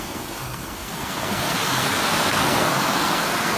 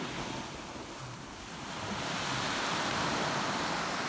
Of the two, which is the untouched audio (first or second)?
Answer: second